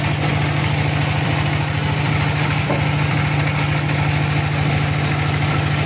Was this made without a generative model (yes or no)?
yes